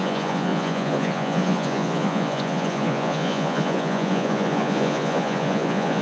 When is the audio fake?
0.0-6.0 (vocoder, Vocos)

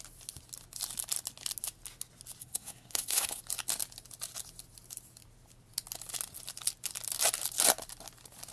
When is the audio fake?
2.4-3.4 (codec, SNAC)

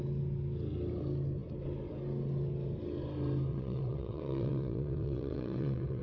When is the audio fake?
3.5-6.0 (vocoder, WaveNeXt)

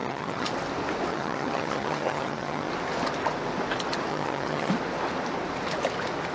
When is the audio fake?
0.0-0.5 (vocoder, HiFi-GAN); 1.1-2.7; 4.1-4.7

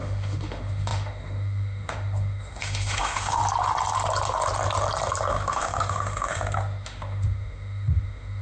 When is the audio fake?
0.0-3.4 (autoencoder, DAC-VAE); 5.3-8.4